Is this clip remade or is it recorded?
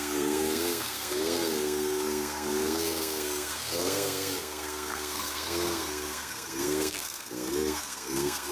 remade